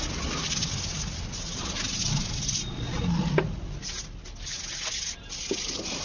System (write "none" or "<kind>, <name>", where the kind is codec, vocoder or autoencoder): none